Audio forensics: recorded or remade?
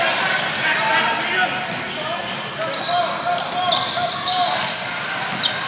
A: recorded